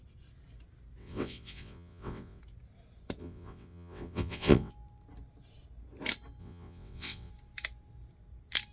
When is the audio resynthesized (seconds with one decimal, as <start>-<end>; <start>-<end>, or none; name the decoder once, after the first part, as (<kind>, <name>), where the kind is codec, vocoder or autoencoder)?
1.0-2.4 (vocoder, WaveNeXt); 3.2-4.7; 6.4-7.3